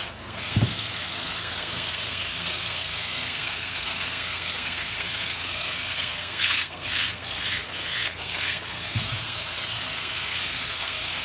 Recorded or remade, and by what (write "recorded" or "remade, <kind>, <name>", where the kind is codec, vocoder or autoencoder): remade, codec, SNAC